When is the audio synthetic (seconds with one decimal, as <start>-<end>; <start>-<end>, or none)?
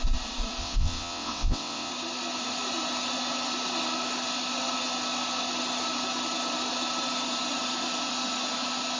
0.6-1.9